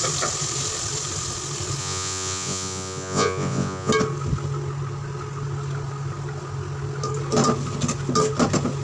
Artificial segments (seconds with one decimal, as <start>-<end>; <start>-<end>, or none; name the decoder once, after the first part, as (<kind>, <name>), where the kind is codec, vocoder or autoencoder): 1.8-3.9 (vocoder, Vocos)